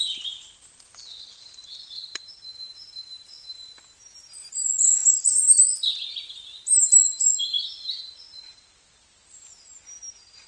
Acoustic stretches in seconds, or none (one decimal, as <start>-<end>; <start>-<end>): 0.0-1.0; 3.6-10.5